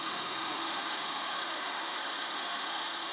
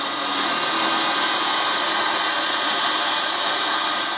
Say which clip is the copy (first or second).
first